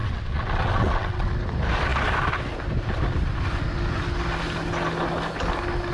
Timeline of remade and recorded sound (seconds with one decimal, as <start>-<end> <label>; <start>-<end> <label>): 0.0-1.3 remade; 1.3-5.9 recorded